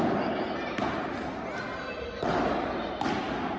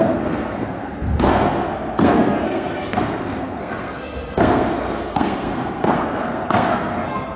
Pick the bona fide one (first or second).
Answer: first